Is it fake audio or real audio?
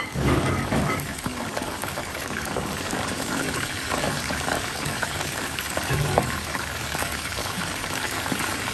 fake